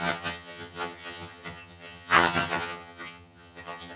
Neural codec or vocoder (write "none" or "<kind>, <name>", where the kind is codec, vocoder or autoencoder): vocoder, HiFi-GAN